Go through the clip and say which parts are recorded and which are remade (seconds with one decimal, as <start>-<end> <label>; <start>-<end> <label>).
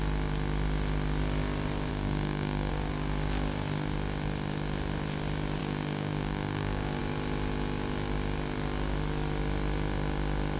0.0-1.9 recorded; 1.9-2.7 remade; 2.7-5.6 recorded; 5.6-7.0 remade; 7.0-10.6 recorded